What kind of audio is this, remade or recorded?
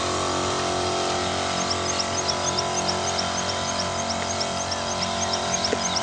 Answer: recorded